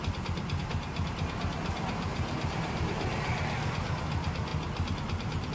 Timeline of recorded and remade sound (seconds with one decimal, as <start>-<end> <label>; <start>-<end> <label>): 0.0-2.1 recorded; 2.1-2.9 remade; 2.9-5.5 recorded